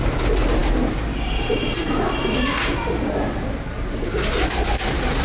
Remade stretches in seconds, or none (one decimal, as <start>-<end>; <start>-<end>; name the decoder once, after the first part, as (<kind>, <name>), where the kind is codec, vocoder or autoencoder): none